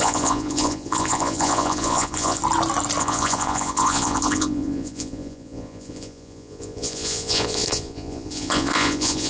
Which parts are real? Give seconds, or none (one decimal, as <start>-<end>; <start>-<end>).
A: 2.4-3.0